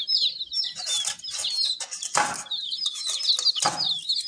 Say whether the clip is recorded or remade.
recorded